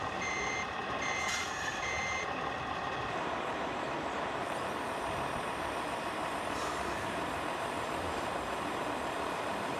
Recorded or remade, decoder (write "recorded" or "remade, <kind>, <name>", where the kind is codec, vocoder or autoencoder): remade, vocoder, BigVGAN v2